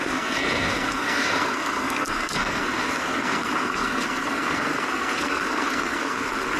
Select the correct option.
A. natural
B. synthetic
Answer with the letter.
B